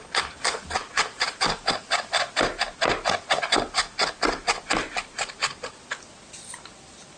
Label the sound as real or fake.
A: real